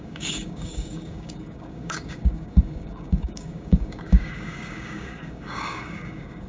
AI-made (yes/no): yes